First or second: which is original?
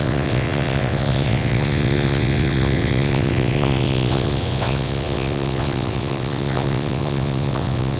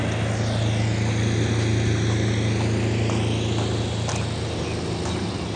second